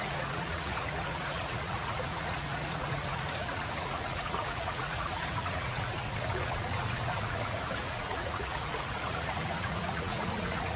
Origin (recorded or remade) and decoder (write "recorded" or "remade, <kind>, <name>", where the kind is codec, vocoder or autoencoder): remade, vocoder, Vocos